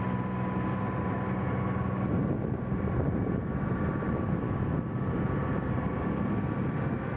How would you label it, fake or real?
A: fake